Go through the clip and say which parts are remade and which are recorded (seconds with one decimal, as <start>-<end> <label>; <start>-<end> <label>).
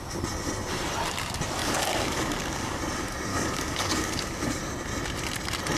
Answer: 0.0-1.6 recorded; 1.6-2.8 remade; 2.8-3.3 recorded; 3.3-4.6 remade; 4.6-5.8 recorded